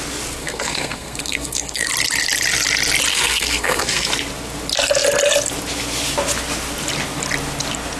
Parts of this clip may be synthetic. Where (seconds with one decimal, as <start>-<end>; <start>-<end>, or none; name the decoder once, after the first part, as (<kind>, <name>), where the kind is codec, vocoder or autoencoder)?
0.4-1.9 (codec, SNAC); 3.1-4.1